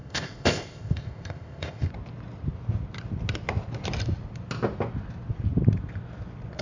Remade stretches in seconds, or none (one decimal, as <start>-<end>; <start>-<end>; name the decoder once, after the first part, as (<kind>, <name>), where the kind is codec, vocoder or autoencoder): 0.0-1.9 (codec, ZipCodec)